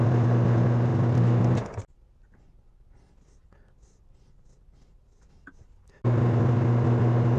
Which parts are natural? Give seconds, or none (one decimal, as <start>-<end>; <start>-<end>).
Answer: 0.0-7.4